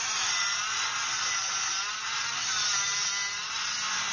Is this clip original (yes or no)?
yes